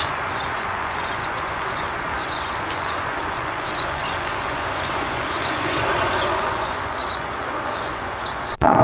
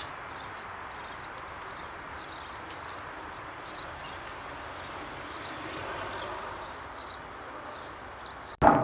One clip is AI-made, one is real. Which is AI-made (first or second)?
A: first